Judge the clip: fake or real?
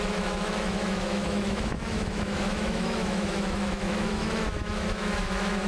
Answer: fake